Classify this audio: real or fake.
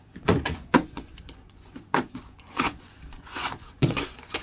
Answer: fake